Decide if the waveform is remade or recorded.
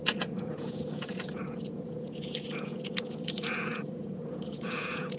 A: remade